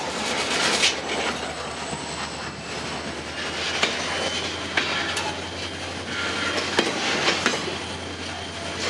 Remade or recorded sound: recorded